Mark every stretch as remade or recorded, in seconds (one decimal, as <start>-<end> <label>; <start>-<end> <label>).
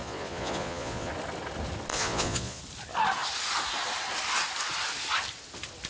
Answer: 0.0-1.1 remade; 1.1-1.9 recorded; 1.9-2.6 remade; 2.6-5.9 recorded